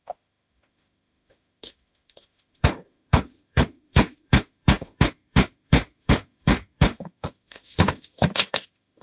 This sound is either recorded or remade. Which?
remade